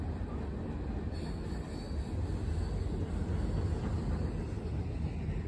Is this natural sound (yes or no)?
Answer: yes